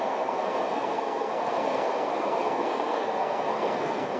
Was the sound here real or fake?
fake